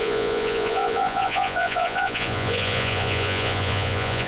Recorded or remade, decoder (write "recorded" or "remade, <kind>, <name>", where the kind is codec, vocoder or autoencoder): remade, vocoder, Vocos